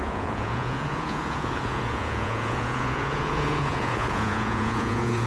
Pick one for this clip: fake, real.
fake